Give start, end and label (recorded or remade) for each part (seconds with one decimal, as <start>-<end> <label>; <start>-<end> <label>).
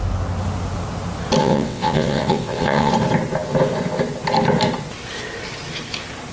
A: 0.0-1.4 recorded; 1.4-2.9 remade; 2.9-6.3 recorded